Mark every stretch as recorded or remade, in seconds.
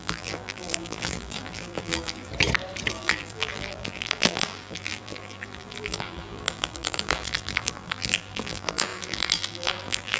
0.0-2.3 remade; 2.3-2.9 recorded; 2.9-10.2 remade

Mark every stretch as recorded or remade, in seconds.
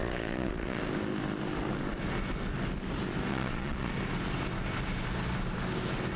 0.0-0.8 remade; 0.8-3.3 recorded; 3.3-3.9 remade; 3.9-6.2 recorded